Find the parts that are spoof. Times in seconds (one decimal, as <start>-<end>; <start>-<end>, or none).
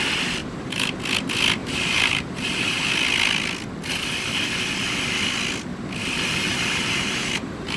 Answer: 0.4-1.0; 1.6-2.9; 6.5-7.8